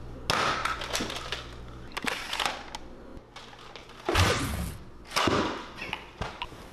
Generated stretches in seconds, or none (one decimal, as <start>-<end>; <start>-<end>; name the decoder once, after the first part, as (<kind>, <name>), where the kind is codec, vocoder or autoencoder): none